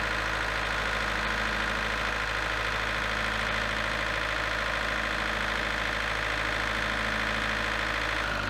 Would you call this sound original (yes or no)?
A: yes